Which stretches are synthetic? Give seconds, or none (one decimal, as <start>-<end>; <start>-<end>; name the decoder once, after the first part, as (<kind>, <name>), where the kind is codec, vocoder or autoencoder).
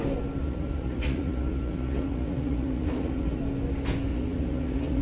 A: 0.4-3.4 (vocoder, Vocos); 4.1-5.0